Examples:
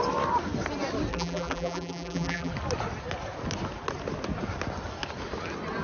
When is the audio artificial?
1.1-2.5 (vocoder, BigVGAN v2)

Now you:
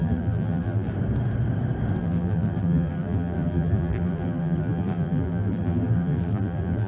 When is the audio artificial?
0.0-0.9 (vocoder, BigVGAN v2); 2.0-6.9

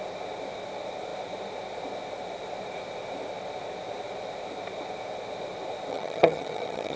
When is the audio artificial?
5.9-7.0 (vocoder, HiFi-GAN)

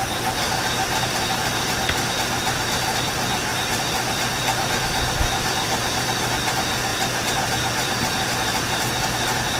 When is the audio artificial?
3.5-6.3 (vocoder, BigVGAN v2); 6.9-8.9

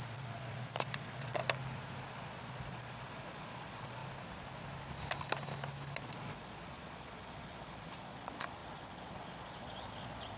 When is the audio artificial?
0.0-1.4 (vocoder, Vocos); 2.1-4.0; 6.0-10.4